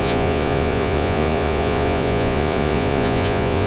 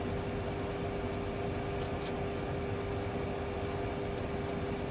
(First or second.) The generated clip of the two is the first